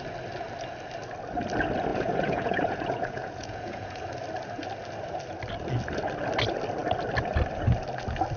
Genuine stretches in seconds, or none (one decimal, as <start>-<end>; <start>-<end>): 0.0-1.9; 4.1-8.4